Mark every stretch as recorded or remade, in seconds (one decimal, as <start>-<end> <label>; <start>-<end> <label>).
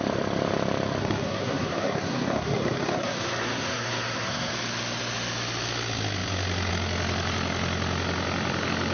0.0-1.0 recorded; 1.0-4.5 remade; 4.5-8.9 recorded